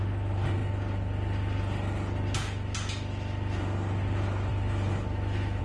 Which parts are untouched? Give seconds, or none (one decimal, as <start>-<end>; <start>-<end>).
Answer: 0.0-4.5